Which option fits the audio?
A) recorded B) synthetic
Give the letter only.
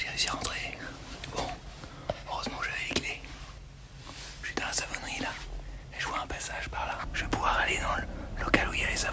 A